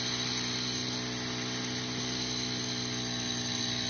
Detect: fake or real real